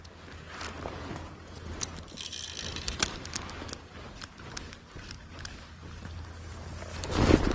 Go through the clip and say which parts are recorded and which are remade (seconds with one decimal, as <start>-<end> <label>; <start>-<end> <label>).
0.0-1.0 recorded; 1.0-1.7 remade; 1.7-7.5 recorded